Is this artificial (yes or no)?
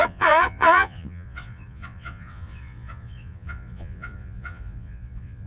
yes